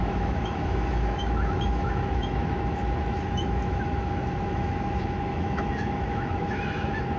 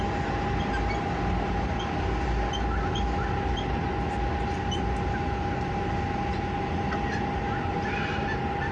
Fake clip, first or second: first